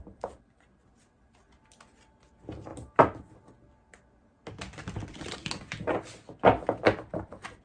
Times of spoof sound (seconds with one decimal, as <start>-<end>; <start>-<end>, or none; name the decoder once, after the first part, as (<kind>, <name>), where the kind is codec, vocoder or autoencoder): none